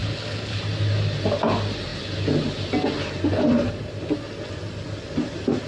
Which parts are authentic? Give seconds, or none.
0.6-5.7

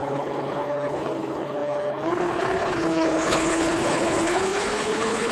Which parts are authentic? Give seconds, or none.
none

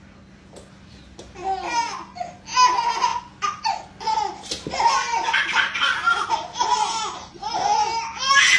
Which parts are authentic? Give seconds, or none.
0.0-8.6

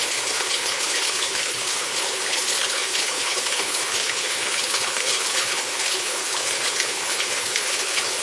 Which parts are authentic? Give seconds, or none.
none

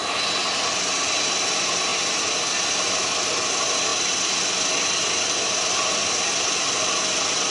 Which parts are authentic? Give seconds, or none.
0.0-7.5